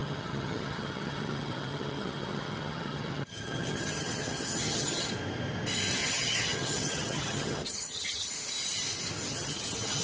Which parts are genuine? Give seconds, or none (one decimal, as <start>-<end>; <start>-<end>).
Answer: 5.1-6.0; 8.3-9.3